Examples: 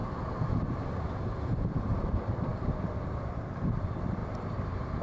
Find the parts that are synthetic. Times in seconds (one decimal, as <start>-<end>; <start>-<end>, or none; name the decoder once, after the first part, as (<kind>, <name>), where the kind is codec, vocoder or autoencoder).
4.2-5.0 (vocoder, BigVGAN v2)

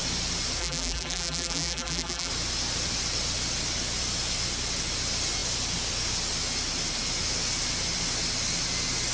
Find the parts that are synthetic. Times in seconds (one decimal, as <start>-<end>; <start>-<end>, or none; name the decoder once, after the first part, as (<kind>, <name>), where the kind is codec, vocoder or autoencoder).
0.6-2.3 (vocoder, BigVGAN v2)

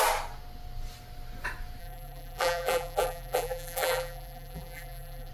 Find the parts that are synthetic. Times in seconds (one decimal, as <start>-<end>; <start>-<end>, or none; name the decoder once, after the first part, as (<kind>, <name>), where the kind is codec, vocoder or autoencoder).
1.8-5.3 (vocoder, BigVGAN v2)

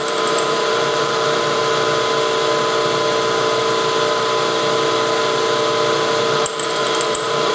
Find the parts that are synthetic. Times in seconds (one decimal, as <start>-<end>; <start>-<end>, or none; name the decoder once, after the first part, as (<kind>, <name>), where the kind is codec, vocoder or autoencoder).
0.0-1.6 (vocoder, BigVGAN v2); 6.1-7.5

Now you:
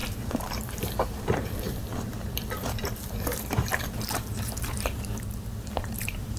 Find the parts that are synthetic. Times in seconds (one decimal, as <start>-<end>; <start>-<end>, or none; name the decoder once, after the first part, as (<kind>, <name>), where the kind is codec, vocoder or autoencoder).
0.0-6.4 (vocoder, BigVGAN v2)

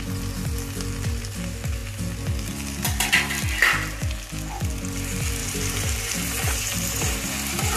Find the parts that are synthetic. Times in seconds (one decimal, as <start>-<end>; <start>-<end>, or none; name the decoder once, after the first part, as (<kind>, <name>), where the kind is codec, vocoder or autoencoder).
5.4-7.8 (vocoder, BigVGAN v2)